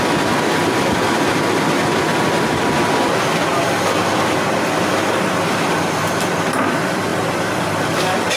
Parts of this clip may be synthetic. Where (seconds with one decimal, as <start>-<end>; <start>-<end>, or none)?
none